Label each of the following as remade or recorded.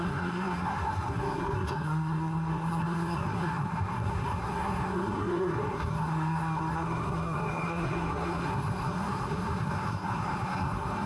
remade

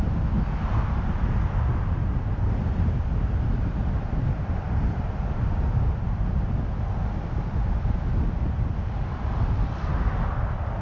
recorded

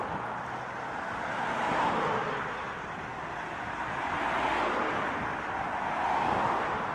recorded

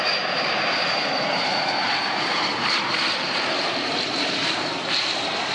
remade